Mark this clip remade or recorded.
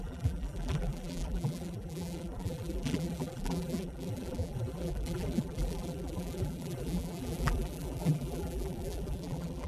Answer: remade